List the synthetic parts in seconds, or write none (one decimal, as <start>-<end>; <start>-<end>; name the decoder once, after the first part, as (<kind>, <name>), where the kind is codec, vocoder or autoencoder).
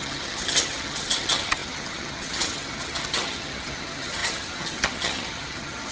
0.0-5.9 (vocoder, HiFi-GAN)